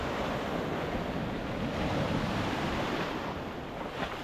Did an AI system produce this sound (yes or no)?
no